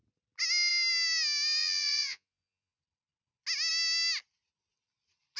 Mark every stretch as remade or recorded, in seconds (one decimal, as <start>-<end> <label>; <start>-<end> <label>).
0.0-1.6 recorded; 1.6-2.8 remade; 2.8-5.4 recorded